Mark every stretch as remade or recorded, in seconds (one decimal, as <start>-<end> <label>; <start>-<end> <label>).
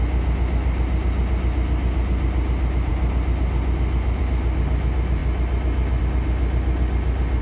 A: 0.0-7.4 recorded